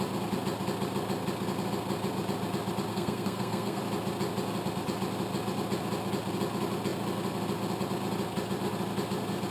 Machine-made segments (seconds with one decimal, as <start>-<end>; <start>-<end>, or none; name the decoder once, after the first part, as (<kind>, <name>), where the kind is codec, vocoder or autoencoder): 2.9-3.8 (codec, SNAC)